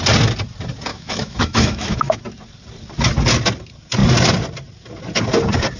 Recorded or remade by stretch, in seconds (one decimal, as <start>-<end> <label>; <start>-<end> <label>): 0.0-0.9 recorded; 0.9-2.2 remade; 2.2-5.8 recorded